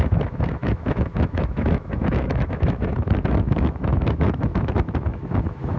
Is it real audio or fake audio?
fake